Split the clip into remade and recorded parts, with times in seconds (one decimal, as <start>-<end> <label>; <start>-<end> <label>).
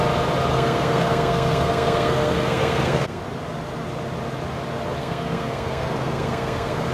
0.0-0.5 recorded; 0.5-3.2 remade; 3.2-5.0 recorded; 5.0-6.9 remade